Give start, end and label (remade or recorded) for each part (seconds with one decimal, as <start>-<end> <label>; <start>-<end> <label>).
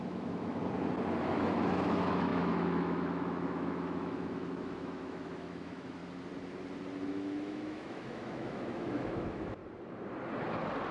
0.0-0.6 remade; 0.6-1.2 recorded; 1.2-6.0 remade; 6.0-7.1 recorded; 7.1-9.6 remade; 9.6-10.9 recorded